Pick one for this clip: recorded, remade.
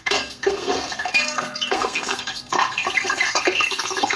remade